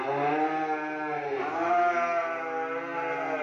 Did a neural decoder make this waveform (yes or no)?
no